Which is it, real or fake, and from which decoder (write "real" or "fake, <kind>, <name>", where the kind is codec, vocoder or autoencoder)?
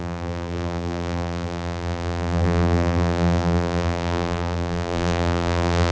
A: fake, vocoder, BigVGAN v2